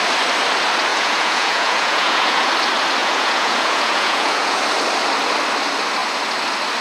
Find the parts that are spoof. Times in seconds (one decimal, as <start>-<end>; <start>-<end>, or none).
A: 0.9-2.5; 3.0-4.6